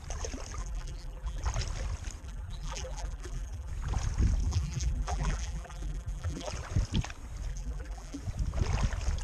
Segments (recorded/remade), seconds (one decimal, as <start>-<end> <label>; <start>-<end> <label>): 0.0-0.6 recorded; 0.6-1.4 remade; 1.4-2.2 recorded; 2.2-3.7 remade; 3.7-4.4 recorded; 4.4-6.5 remade; 6.5-7.5 recorded; 7.5-8.2 remade; 8.2-9.2 recorded